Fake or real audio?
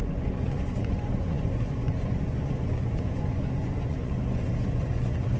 fake